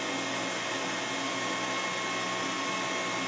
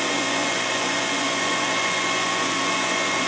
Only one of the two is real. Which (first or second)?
first